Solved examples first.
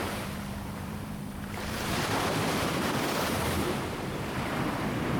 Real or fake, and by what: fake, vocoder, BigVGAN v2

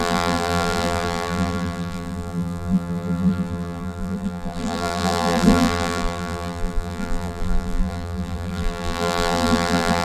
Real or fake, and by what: fake, vocoder, BigVGAN v2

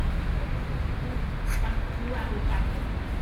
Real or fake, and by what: real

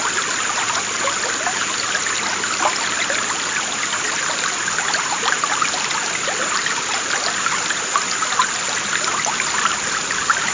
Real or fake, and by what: real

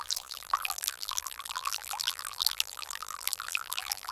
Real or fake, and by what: fake, vocoder, BigVGAN v2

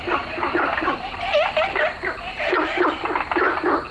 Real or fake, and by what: real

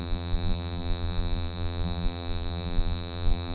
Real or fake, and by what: fake, vocoder, BigVGAN v2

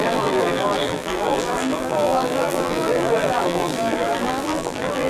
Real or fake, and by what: fake, vocoder, BigVGAN v2